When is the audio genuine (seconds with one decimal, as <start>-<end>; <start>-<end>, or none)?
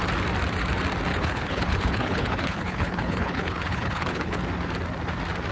0.0-1.1; 4.4-5.5